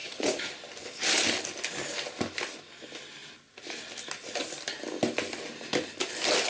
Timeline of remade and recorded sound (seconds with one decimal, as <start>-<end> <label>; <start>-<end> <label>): 0.0-0.5 remade; 0.5-6.5 recorded